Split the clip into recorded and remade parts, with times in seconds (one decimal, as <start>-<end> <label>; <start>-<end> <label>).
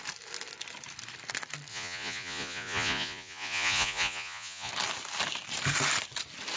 0.0-1.7 recorded; 1.7-4.7 remade; 4.7-6.6 recorded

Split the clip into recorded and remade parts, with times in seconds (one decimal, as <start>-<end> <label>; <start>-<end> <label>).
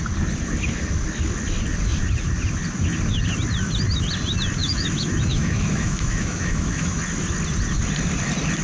0.0-4.6 recorded; 4.6-7.0 remade; 7.0-8.6 recorded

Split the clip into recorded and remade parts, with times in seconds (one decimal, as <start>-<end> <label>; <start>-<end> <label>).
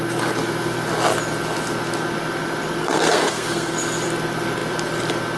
0.0-2.8 recorded; 2.8-3.7 remade; 3.7-5.4 recorded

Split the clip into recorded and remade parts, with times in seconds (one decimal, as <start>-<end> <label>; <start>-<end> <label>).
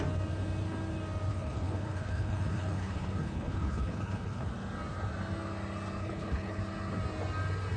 0.0-1.3 recorded; 1.3-4.5 remade; 4.5-6.0 recorded; 6.0-6.6 remade; 6.6-7.8 recorded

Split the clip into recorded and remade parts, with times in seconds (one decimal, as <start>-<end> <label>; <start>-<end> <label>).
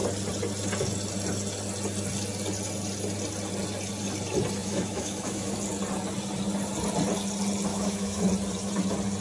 0.0-4.6 recorded; 4.6-5.5 remade; 5.5-7.7 recorded; 7.7-8.2 remade; 8.2-9.2 recorded